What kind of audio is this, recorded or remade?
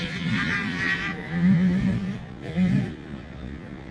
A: remade